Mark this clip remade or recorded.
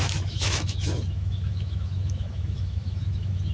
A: remade